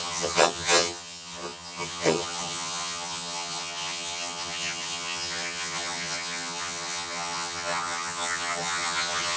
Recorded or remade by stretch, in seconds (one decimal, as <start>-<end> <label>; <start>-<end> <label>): 0.0-9.4 remade